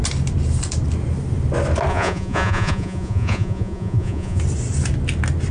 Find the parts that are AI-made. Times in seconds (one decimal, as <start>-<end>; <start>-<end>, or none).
1.9-4.4

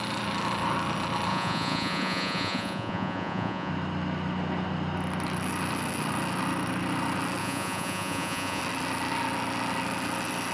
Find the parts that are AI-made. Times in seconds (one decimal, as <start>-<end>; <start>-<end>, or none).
1.3-3.7; 7.4-8.6

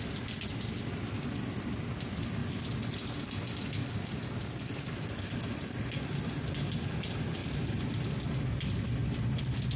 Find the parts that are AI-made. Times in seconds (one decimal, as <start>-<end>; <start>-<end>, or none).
none

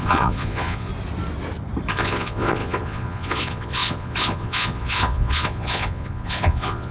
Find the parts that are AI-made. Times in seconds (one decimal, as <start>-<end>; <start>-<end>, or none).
0.0-0.9; 1.9-6.9

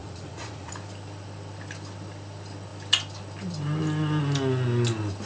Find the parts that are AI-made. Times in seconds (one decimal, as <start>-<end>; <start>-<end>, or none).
0.0-0.7

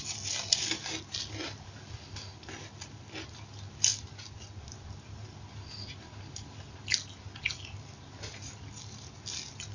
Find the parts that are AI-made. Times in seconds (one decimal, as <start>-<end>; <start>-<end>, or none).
none

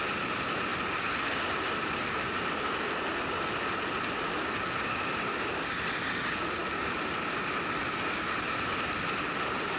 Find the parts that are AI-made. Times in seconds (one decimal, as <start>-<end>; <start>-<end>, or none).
none

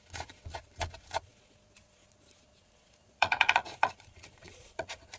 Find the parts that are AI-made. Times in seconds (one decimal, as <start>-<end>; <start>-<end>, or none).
0.0-5.2